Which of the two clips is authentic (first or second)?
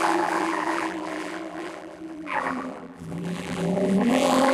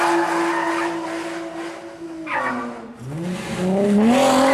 second